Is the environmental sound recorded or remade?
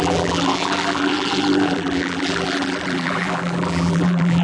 remade